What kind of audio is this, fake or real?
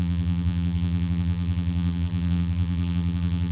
fake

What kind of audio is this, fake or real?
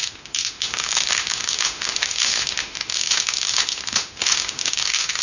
fake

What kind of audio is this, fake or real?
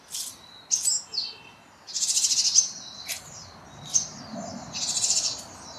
real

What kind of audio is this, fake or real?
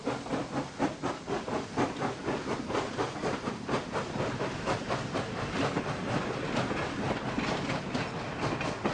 real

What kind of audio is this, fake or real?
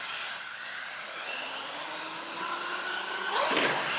real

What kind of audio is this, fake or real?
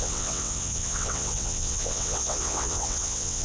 fake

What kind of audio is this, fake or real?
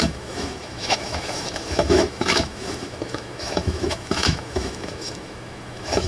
fake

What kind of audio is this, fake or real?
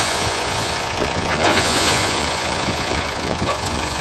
fake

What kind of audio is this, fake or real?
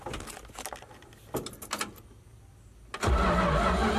real